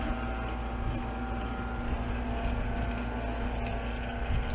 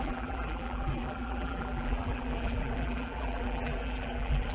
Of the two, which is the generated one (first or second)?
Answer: second